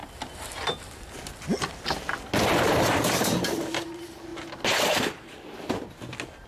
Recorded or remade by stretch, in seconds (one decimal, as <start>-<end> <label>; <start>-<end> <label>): 0.0-6.5 recorded